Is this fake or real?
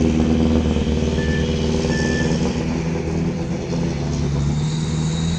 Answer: real